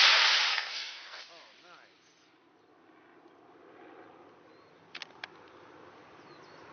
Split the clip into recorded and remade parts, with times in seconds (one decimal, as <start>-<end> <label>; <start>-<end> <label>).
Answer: 0.0-0.5 recorded; 0.5-1.2 remade; 1.2-6.7 recorded